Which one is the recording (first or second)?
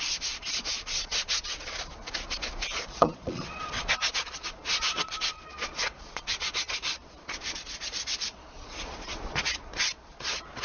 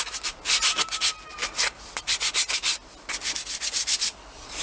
second